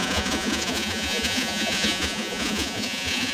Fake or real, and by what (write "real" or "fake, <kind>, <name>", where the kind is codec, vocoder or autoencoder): fake, vocoder, Vocos